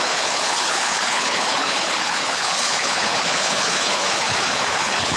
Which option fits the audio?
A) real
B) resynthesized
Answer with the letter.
B